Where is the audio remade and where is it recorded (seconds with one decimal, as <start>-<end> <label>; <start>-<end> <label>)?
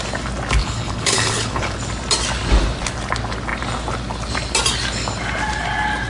0.0-0.6 recorded; 0.6-1.7 remade; 1.7-6.1 recorded